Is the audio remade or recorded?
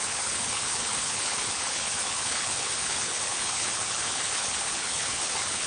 remade